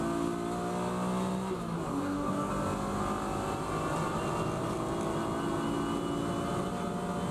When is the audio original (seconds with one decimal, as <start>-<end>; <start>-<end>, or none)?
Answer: 0.0-1.9; 2.5-7.3